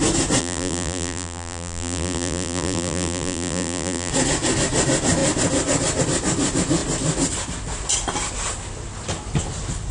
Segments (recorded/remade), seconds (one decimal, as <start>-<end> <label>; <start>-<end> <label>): 0.0-0.4 recorded; 0.4-4.1 remade; 4.1-9.9 recorded

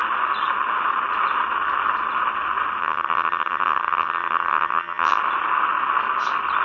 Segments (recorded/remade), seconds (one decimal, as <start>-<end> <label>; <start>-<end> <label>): 0.0-2.8 recorded; 2.8-5.2 remade; 5.2-6.6 recorded

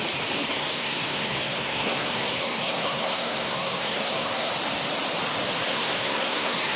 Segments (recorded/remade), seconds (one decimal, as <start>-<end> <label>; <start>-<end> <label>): 0.0-0.5 recorded; 0.5-4.5 remade; 4.5-5.7 recorded; 5.7-6.8 remade

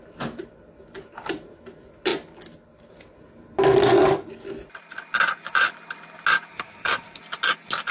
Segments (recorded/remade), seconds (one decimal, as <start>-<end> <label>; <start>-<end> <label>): 0.0-3.8 recorded; 3.8-4.3 remade; 4.3-6.5 recorded; 6.5-7.2 remade; 7.2-7.9 recorded

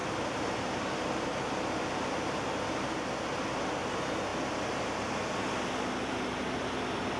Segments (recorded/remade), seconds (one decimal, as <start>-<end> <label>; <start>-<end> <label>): 0.0-7.2 recorded

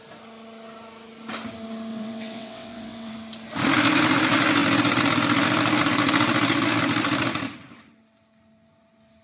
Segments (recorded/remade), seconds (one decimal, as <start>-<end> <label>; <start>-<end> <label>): 0.0-1.9 recorded; 1.9-3.1 remade; 3.1-9.2 recorded

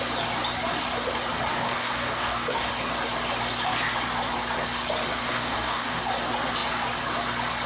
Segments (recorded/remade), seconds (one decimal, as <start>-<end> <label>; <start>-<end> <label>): 0.0-1.5 recorded; 1.5-2.7 remade; 2.7-5.2 recorded; 5.2-6.0 remade; 6.0-7.7 recorded

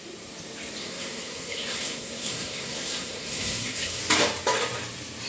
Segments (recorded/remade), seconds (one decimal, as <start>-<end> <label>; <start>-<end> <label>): 0.0-0.8 recorded; 0.8-4.0 remade; 4.0-5.3 recorded